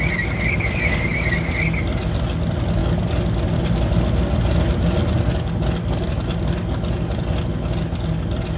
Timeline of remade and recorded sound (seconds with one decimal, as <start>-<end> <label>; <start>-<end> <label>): 0.0-8.6 recorded